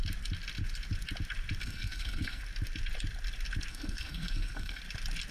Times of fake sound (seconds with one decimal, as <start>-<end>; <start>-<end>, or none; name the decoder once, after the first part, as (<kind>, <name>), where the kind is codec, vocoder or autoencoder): 1.6-2.4 (codec, SNAC); 3.7-4.8